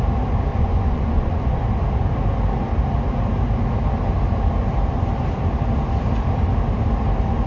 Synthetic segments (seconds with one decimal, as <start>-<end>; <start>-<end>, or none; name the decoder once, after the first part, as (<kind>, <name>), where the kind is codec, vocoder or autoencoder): 0.5-1.6 (vocoder, Vocos)